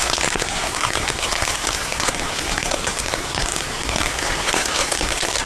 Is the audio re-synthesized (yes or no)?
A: yes